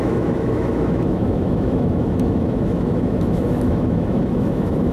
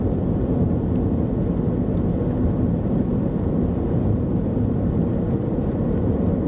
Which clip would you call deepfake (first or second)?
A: first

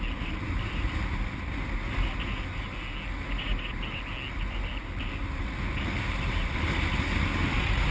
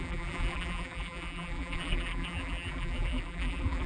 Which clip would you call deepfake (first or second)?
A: second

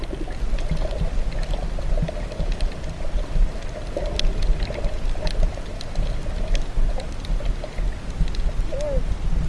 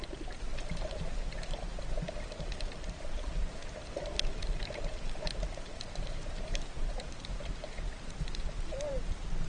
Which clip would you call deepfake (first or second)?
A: second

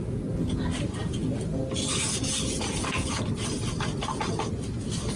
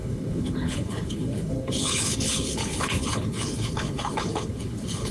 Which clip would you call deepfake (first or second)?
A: second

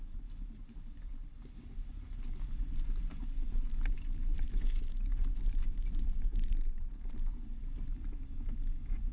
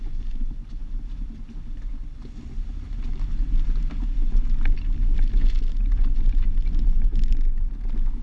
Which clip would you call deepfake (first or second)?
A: first